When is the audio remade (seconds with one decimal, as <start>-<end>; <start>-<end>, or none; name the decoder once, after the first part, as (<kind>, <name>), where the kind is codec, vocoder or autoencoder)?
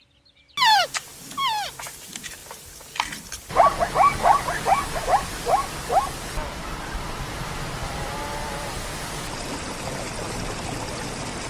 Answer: none